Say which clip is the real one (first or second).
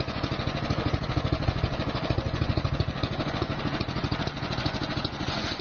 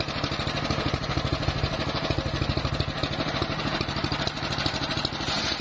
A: second